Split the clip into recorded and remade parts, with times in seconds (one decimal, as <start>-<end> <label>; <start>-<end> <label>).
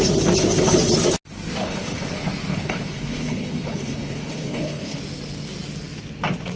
0.0-1.6 recorded; 1.6-2.1 remade; 2.1-2.5 recorded; 2.5-5.0 remade; 5.0-6.6 recorded